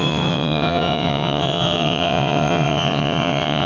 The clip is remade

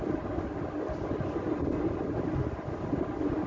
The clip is recorded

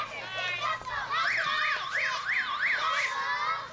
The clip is recorded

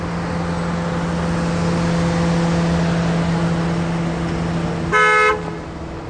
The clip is recorded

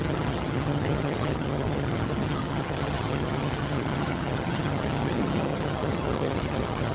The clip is remade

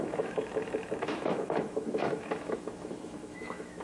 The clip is remade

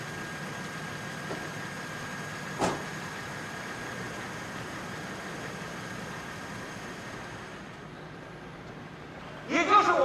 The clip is recorded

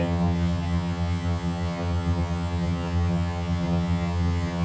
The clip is remade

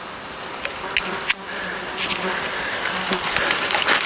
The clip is recorded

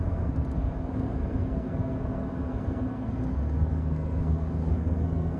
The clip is remade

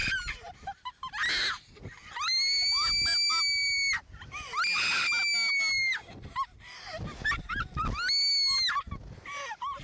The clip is recorded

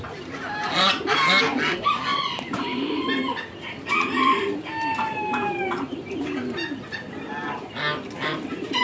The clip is recorded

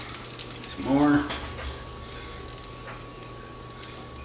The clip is recorded